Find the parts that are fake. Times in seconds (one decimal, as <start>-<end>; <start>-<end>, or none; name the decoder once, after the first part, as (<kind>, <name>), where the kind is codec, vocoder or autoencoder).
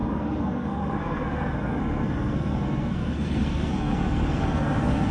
0.0-5.1 (codec, SNAC)